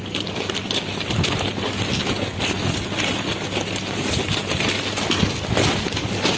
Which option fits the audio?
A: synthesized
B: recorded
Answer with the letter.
B